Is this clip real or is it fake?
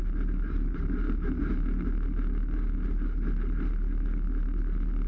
real